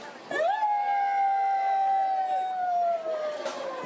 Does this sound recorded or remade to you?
recorded